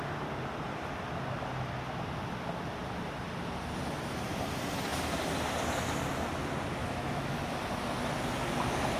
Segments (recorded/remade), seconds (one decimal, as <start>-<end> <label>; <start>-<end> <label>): 0.0-6.8 recorded; 6.8-7.4 remade; 7.4-9.0 recorded